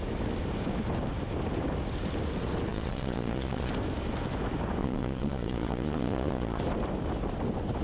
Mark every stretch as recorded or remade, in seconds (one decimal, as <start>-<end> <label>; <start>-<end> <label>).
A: 0.0-2.7 recorded; 2.7-3.7 remade; 3.7-4.8 recorded; 4.8-6.6 remade; 6.6-7.8 recorded